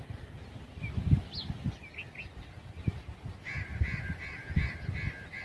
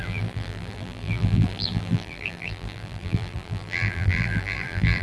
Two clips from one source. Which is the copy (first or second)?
second